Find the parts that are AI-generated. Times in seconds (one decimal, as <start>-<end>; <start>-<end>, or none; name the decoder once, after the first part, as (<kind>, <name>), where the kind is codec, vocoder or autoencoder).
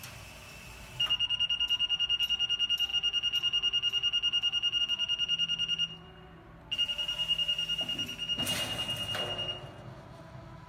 none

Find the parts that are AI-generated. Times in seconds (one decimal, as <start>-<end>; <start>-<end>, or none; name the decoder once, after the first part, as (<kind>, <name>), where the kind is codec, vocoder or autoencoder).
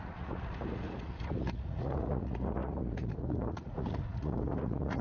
0.0-5.0 (vocoder, Vocos)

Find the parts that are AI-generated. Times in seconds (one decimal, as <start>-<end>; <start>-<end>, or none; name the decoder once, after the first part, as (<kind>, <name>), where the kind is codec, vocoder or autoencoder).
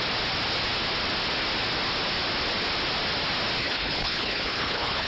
3.6-5.1 (codec, HILCodec)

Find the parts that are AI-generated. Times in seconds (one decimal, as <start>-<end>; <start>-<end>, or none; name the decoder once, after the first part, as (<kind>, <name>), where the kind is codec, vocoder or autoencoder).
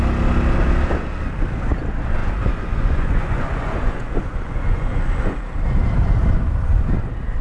2.2-5.5 (vocoder, Vocos)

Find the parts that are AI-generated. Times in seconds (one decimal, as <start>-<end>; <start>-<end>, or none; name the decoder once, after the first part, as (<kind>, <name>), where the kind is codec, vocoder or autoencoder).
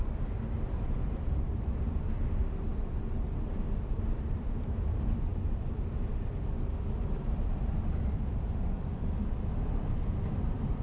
0.0-2.7 (vocoder, BigVGAN v2); 3.5-10.8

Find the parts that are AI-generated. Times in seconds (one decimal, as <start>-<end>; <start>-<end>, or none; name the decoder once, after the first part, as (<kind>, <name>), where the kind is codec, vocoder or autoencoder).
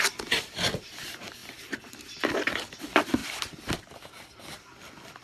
0.0-5.2 (vocoder, BigVGAN v2)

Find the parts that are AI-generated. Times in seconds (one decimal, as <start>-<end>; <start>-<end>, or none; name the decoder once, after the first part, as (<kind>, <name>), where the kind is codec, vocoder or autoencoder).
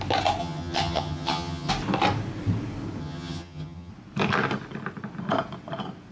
0.4-1.7 (vocoder, HiFi-GAN); 3.0-3.9